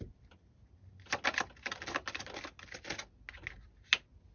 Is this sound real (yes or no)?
yes